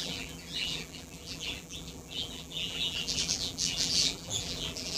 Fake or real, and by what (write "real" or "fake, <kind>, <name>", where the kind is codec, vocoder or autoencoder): fake, vocoder, BigVGAN v2